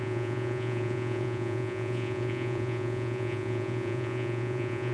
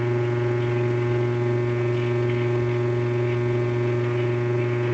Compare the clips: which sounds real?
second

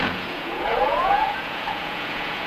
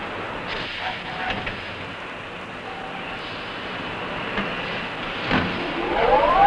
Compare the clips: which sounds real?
second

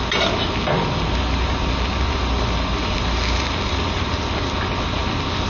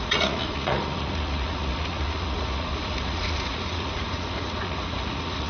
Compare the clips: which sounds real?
first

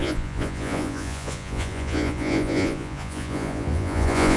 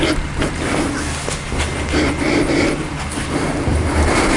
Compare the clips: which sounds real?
second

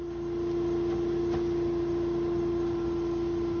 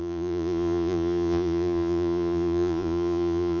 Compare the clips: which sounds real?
first